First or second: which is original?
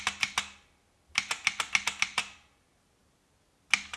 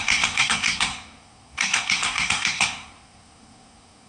first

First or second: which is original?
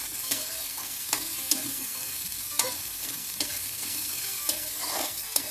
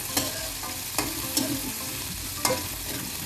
second